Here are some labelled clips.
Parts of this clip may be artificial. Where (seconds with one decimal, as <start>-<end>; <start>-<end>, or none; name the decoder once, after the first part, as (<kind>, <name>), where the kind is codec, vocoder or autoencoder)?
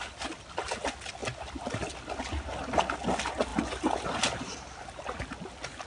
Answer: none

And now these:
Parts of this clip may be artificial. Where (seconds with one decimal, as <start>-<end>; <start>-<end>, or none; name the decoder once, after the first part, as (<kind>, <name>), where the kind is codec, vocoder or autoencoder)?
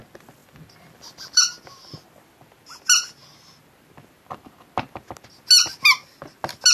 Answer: 0.4-1.4 (vocoder, BigVGAN v2)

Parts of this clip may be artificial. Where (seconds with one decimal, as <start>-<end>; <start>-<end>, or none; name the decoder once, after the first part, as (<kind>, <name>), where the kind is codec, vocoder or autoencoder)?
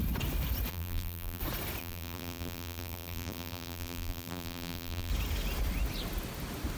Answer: 0.7-1.4 (vocoder, BigVGAN v2); 1.8-5.1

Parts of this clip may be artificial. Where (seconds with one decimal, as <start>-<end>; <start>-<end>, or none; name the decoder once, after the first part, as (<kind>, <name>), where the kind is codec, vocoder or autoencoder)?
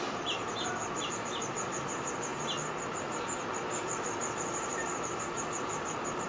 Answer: 0.0-0.4 (vocoder, BigVGAN v2); 1.0-2.3; 2.9-6.3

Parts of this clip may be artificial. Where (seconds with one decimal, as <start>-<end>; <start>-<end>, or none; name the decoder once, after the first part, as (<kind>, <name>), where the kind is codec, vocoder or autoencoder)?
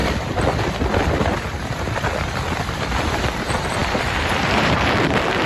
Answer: 0.0-3.2 (vocoder, BigVGAN v2); 3.8-5.1